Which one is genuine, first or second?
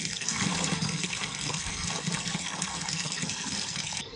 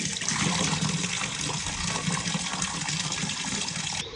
second